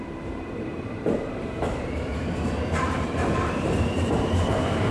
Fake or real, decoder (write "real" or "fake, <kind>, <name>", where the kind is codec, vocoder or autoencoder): fake, vocoder, BigVGAN v2